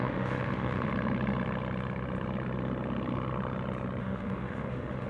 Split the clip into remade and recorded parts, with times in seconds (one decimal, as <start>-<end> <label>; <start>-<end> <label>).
0.0-0.9 remade; 0.9-4.0 recorded; 4.0-5.1 remade